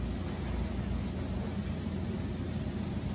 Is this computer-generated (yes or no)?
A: no